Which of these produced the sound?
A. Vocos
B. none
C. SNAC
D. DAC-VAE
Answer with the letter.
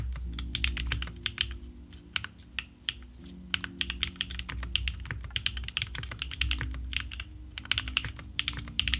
B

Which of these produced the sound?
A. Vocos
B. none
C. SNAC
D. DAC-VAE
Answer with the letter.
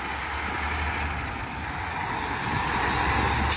B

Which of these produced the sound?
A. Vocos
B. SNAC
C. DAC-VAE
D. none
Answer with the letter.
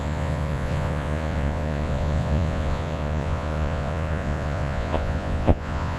A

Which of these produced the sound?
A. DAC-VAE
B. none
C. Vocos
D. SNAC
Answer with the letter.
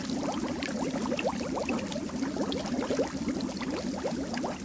B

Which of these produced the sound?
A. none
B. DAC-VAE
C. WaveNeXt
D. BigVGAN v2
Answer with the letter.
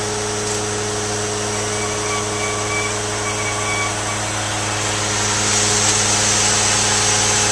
A